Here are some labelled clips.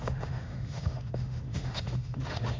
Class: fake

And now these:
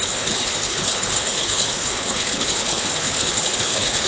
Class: fake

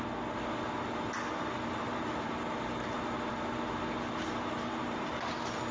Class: real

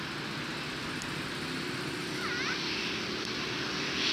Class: real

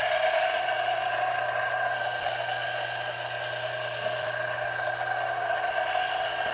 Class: real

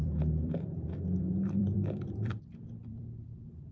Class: fake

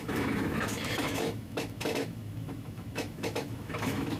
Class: fake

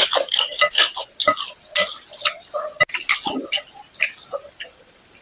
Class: real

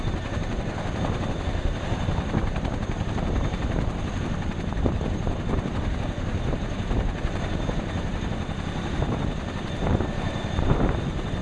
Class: fake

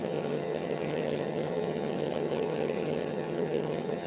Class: fake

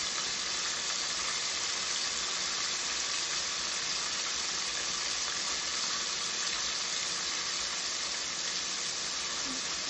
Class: real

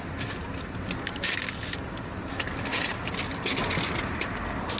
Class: real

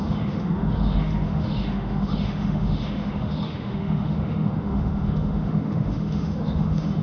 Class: fake